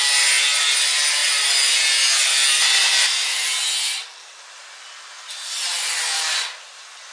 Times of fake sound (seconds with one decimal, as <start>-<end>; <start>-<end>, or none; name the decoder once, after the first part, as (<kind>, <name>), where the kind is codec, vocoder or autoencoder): none